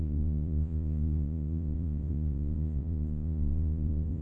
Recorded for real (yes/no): no